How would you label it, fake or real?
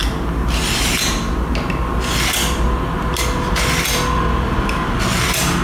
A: real